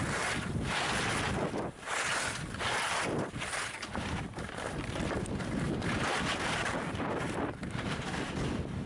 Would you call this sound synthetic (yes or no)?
no